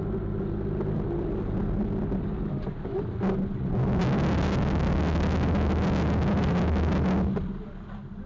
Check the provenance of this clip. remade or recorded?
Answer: recorded